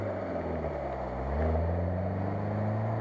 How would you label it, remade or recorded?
recorded